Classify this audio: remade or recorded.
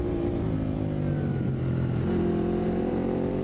remade